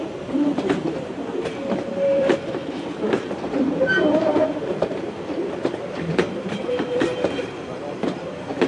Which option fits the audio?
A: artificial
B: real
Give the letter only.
A